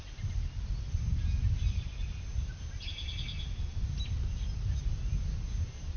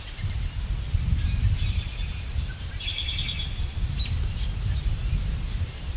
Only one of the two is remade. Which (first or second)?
second